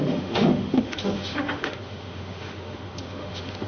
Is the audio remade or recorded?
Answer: remade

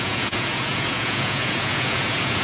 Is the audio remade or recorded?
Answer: remade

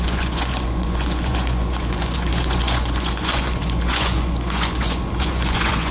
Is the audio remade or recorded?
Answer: remade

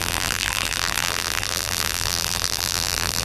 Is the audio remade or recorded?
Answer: remade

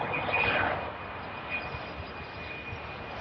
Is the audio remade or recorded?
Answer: recorded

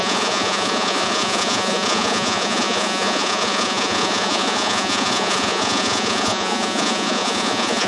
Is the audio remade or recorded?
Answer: remade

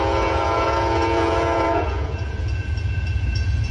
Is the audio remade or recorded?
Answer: remade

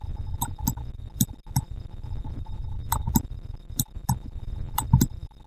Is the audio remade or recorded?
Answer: recorded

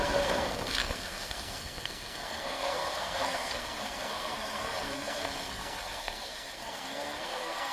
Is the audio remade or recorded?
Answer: remade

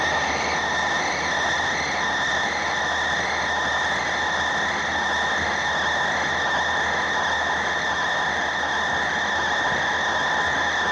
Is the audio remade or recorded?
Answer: recorded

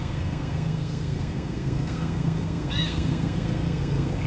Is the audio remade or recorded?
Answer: remade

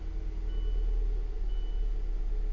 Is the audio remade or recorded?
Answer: recorded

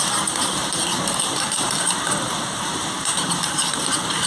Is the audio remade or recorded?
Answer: remade